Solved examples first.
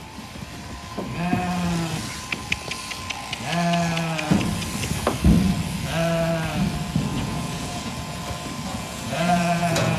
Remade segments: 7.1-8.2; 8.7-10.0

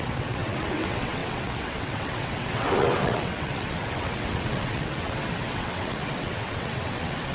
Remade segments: 0.0-7.3

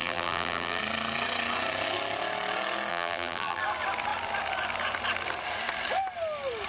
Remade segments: 0.0-0.8; 2.9-3.6

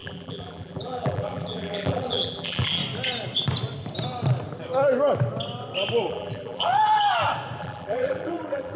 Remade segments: 0.0-2.8; 6.1-6.7; 7.6-8.8

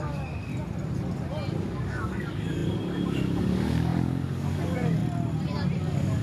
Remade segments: 0.0-0.5; 1.6-5.0; 5.8-6.2

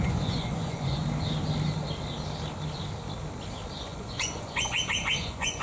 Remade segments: 0.0-1.0; 3.8-5.6

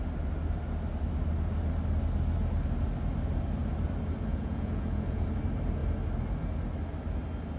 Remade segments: 4.3-5.2